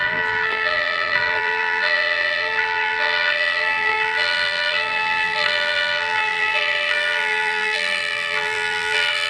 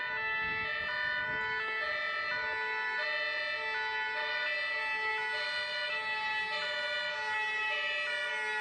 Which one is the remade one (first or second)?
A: first